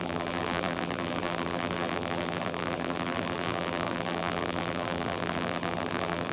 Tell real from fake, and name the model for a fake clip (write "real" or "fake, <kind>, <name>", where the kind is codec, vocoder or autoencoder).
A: fake, vocoder, BigVGAN v2